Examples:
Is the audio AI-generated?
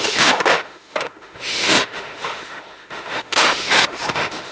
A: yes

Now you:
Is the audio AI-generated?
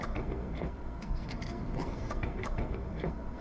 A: yes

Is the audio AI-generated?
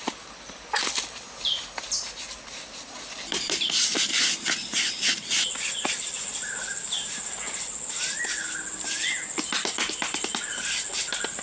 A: no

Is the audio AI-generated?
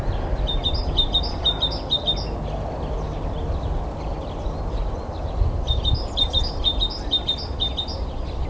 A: no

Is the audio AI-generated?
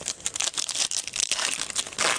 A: yes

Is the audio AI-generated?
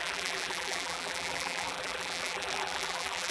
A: yes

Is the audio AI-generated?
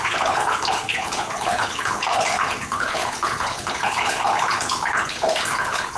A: yes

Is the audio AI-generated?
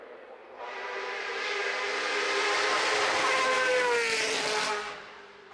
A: no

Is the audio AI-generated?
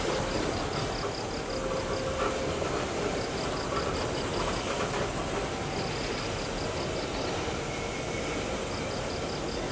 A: no